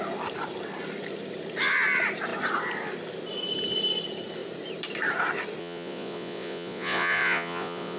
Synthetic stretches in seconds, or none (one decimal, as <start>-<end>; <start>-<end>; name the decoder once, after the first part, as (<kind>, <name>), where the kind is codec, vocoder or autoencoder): 5.6-8.0 (vocoder, Vocos)